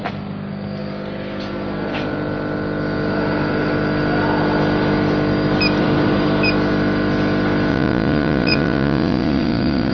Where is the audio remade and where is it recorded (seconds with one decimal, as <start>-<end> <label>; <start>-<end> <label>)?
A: 0.0-7.7 recorded; 7.7-9.9 remade